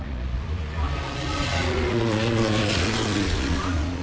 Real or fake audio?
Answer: fake